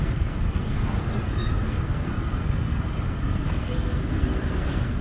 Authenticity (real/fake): fake